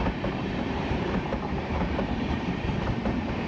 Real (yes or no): no